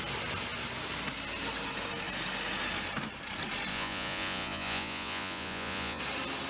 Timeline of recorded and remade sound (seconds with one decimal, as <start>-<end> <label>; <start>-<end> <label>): 0.0-3.7 recorded; 3.7-6.0 remade; 6.0-6.5 recorded